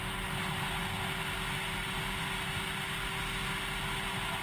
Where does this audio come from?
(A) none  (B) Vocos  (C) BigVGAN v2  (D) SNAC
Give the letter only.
A